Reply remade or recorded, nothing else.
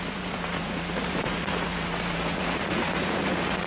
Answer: remade